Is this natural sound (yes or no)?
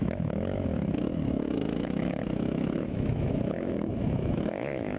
no